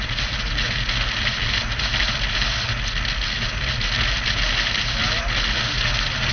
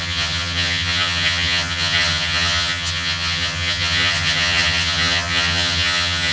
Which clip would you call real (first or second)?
first